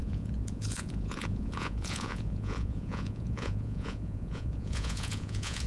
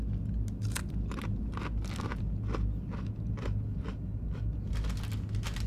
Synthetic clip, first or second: first